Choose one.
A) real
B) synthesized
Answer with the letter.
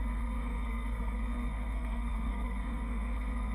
B